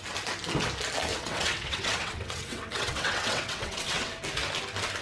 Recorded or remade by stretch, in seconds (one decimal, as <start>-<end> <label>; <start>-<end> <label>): 0.0-1.1 recorded; 1.1-4.1 remade; 4.1-5.0 recorded